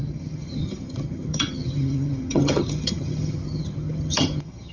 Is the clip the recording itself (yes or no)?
no